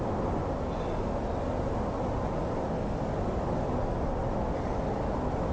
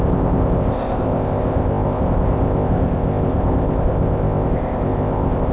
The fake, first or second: second